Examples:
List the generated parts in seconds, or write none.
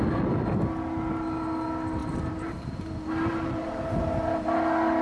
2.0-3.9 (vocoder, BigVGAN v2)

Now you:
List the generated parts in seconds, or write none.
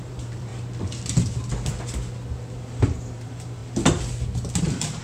0.0-0.5 (vocoder, BigVGAN v2); 2.6-3.6; 4.6-5.0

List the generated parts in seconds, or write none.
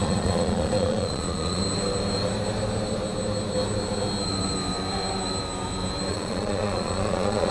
0.0-1.6 (vocoder, Vocos); 6.1-7.5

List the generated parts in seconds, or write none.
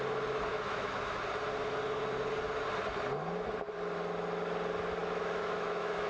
0.5-1.2 (autoencoder, DAC-VAE); 5.0-6.1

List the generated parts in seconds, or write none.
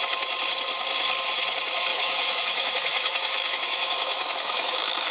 1.9-5.1 (autoencoder, DAC-VAE)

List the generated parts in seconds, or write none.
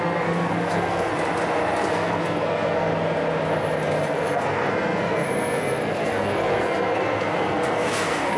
0.0-1.1 (codec, SNAC); 1.9-2.9; 4.1-8.4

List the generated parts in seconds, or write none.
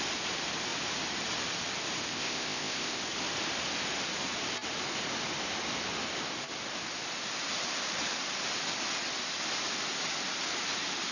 2.1-3.0 (codec, ZipCodec)